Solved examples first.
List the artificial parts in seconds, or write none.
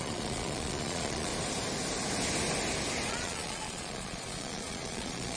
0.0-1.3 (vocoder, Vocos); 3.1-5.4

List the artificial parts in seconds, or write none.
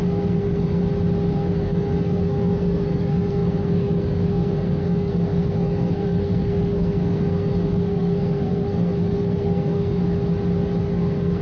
0.0-0.8 (codec, SNAC); 1.3-10.0; 10.8-11.4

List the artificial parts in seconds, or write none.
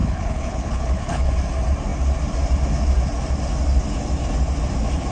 0.0-1.3 (codec, HILCodec)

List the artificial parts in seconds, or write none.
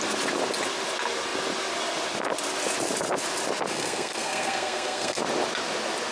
3.7-5.2 (codec, SNAC)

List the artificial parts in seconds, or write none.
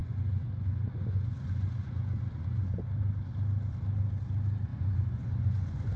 0.0-2.8 (vocoder, Vocos); 4.7-6.0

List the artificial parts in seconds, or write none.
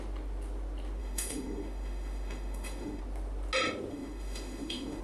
1.0-3.0 (autoencoder, DAC-VAE); 3.9-5.0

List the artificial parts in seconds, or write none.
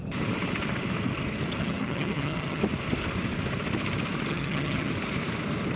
1.6-2.6 (vocoder, HiFi-GAN); 4.3-4.9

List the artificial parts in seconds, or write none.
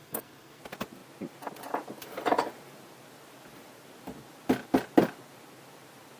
0.0-0.6 (codec, SNAC)